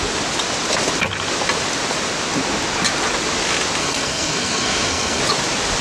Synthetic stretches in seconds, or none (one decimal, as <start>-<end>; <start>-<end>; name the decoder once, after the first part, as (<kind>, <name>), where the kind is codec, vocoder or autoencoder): 3.8-5.2 (codec, SNAC)